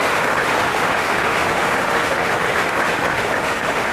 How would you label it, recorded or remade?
remade